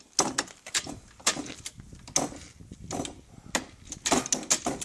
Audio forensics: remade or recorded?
recorded